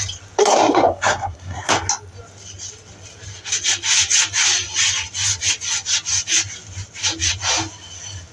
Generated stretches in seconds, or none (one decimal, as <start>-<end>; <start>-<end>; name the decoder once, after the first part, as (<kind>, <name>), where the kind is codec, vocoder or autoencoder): 0.4-1.7 (codec, SNAC)